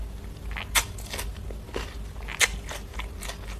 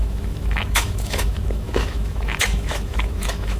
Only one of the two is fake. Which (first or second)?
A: second